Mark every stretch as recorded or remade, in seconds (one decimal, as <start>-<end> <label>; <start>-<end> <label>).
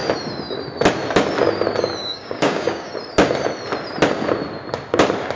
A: 0.0-2.0 recorded; 2.0-2.9 remade; 2.9-5.4 recorded